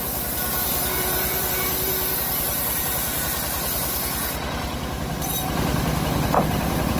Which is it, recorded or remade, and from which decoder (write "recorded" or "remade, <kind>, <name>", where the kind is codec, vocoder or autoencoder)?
recorded